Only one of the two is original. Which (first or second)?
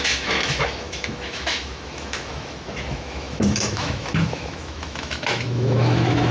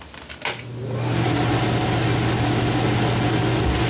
second